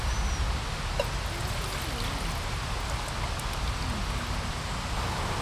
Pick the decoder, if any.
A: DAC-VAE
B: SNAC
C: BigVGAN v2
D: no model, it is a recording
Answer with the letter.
D